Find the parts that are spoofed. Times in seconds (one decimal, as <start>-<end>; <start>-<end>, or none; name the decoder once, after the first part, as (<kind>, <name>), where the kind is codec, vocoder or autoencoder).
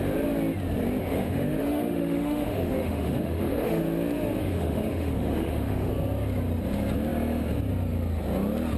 1.0-3.8 (autoencoder, DAC-VAE); 4.4-5.9